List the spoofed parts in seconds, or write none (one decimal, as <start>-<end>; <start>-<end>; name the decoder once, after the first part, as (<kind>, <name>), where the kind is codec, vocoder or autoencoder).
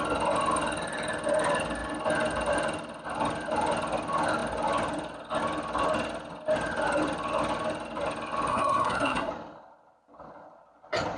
8.5-9.3 (codec, SNAC)